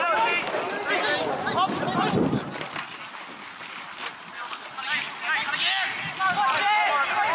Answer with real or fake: real